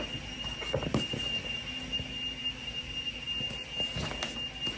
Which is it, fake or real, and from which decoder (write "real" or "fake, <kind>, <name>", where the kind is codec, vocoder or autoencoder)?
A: real